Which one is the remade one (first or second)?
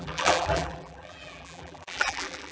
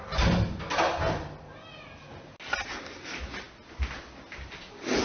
first